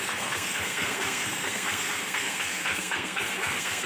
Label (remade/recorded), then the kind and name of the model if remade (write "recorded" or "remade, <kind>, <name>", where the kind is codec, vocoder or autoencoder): remade, codec, SNAC